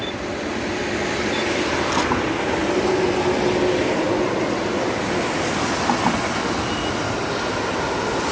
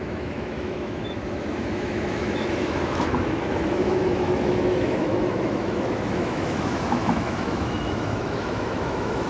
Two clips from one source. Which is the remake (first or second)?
second